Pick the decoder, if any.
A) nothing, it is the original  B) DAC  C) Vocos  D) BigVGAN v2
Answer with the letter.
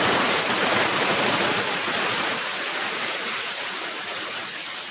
C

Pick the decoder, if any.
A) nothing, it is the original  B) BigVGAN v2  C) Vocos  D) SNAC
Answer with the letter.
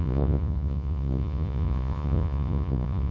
C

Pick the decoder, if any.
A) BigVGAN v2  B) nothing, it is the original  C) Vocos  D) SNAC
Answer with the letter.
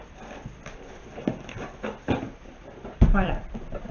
A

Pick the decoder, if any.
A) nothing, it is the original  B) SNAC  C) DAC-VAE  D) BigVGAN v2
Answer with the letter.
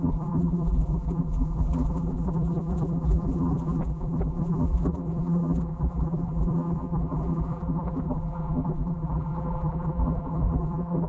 D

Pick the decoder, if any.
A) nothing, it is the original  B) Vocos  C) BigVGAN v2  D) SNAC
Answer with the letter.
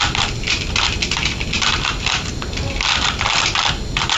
A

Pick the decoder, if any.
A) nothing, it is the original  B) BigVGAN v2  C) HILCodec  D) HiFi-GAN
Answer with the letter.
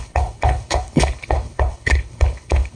C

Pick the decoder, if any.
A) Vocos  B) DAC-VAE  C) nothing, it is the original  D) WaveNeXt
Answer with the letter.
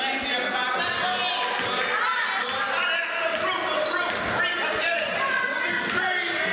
C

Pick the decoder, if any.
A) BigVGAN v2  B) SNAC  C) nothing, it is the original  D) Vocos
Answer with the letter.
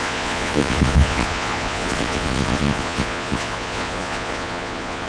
D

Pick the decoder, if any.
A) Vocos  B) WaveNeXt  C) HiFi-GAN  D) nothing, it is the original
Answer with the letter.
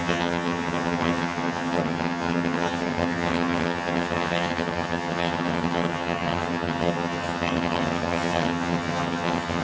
C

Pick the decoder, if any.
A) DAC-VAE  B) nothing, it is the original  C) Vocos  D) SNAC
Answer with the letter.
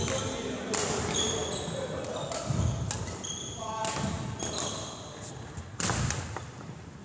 B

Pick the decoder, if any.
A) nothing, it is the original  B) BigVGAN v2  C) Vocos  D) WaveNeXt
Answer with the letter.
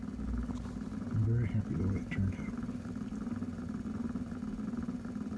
A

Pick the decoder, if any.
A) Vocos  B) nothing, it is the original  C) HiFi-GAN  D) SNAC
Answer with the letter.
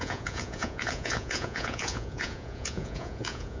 A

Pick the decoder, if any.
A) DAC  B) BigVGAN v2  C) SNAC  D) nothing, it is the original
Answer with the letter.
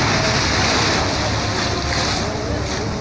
D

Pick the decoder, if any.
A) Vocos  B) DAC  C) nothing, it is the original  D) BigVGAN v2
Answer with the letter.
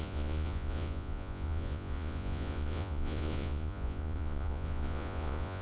A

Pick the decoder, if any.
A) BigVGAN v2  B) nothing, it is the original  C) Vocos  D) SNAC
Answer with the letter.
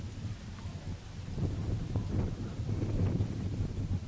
B